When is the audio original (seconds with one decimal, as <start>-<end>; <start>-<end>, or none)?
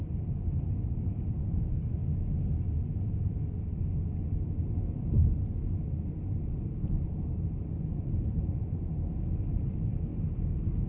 2.0-6.1; 10.1-10.9